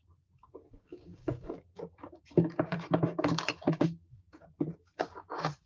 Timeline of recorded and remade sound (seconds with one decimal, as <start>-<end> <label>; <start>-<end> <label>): 0.0-5.7 remade